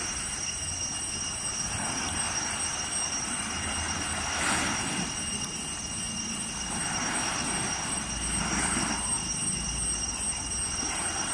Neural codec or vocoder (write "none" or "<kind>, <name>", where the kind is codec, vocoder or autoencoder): none